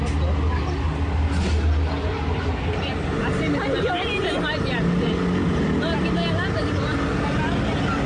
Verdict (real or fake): real